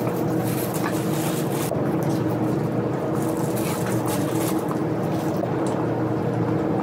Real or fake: real